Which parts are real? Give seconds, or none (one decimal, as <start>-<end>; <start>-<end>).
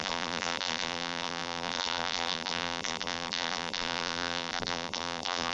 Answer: none